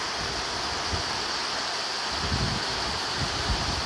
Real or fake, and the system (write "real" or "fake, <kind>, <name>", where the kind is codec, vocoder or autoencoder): real